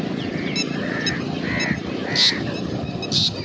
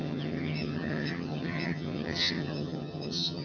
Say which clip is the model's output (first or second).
second